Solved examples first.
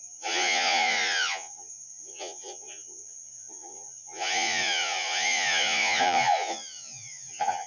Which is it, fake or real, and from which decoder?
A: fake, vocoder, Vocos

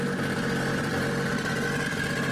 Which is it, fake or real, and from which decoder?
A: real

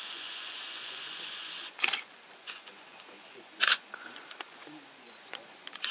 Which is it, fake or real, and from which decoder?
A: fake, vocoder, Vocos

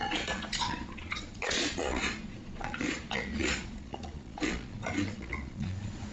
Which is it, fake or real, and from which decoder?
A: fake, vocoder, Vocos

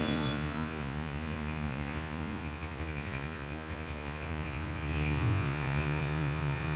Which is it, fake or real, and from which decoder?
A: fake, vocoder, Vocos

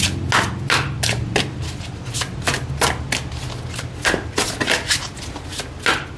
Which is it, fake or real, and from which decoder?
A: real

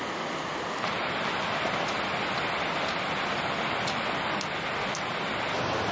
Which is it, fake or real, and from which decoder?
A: real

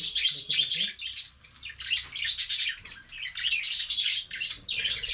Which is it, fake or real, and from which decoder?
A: real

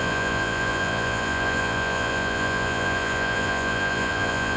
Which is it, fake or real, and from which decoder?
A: fake, vocoder, Vocos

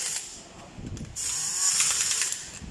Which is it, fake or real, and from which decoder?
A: real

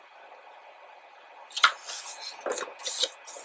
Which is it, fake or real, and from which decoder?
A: real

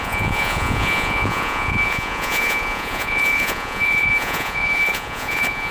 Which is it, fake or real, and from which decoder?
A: fake, vocoder, Vocos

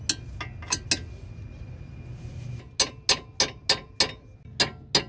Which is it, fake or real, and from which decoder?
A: real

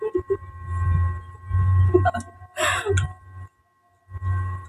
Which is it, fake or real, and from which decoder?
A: real